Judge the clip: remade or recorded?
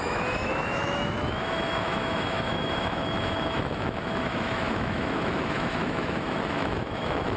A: remade